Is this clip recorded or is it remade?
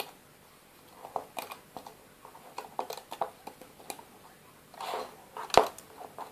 recorded